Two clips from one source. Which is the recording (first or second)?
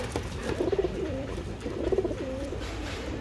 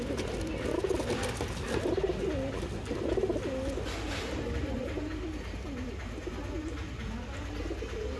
second